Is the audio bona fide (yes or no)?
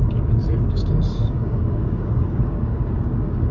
no